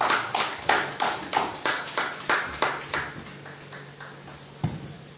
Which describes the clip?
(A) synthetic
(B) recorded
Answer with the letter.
B